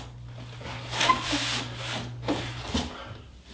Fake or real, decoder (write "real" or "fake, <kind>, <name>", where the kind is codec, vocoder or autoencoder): real